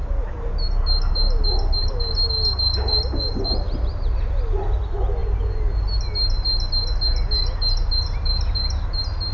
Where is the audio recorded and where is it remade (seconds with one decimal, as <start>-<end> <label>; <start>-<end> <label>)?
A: 0.0-9.3 recorded